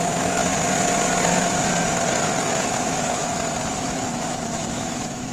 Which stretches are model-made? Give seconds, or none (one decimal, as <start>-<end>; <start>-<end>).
0.0-0.4; 2.6-3.2; 3.7-5.3